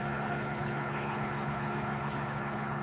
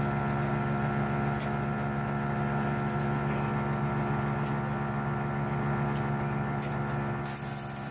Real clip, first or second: second